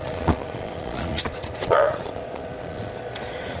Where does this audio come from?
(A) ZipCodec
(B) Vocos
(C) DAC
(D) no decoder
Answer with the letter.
B